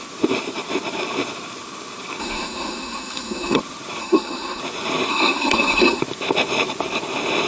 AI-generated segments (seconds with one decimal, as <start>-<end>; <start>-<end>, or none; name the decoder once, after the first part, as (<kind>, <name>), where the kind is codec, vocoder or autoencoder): 2.2-3.6 (codec, SNAC); 4.0-4.6; 5.1-6.0

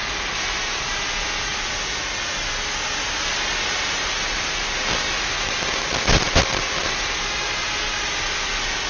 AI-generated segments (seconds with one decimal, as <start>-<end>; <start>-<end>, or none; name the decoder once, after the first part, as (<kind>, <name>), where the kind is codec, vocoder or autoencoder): none

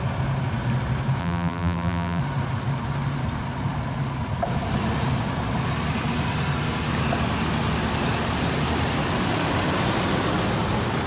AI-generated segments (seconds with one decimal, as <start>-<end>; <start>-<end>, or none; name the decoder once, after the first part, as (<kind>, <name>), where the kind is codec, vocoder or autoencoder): 1.2-2.2 (vocoder, BigVGAN v2)

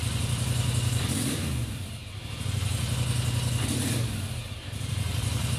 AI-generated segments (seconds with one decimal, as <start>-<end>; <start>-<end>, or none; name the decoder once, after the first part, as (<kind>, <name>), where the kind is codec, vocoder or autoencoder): 0.0-2.0 (vocoder, BigVGAN v2); 4.5-5.6